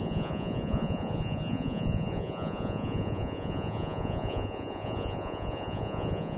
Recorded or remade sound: remade